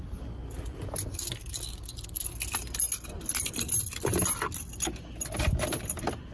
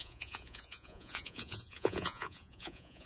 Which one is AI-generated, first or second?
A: second